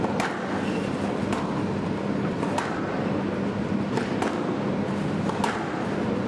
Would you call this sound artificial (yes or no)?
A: no